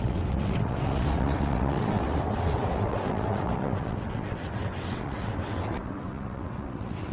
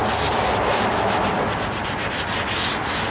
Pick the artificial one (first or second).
first